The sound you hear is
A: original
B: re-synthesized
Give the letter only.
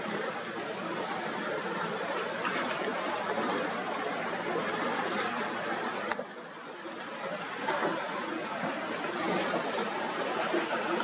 A